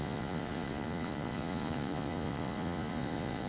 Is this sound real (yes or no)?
no